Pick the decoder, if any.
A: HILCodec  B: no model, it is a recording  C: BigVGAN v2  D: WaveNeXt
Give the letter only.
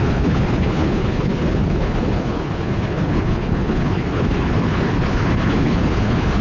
A